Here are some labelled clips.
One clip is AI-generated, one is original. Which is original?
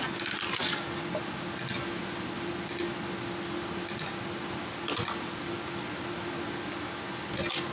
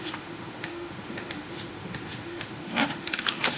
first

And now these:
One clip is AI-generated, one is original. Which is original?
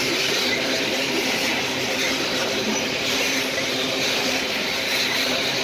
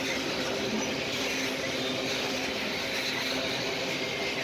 second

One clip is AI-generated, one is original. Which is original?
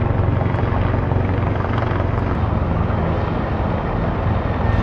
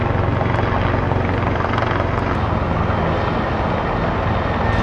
second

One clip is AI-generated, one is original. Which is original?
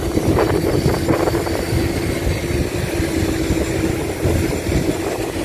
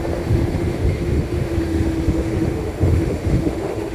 first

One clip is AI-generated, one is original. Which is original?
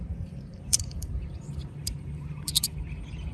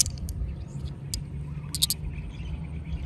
second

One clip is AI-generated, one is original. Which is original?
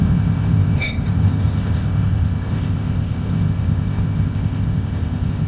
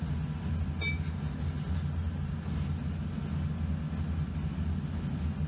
second